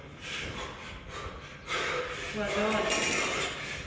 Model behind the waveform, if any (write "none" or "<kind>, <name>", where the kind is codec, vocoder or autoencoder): none